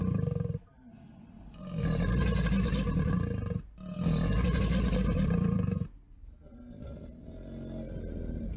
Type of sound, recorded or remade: recorded